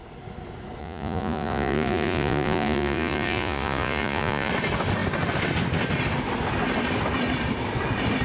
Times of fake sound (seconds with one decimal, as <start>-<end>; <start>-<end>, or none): 0.8-4.5